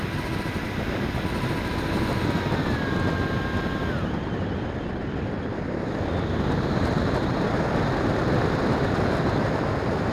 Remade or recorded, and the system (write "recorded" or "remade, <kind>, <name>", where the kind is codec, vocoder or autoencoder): recorded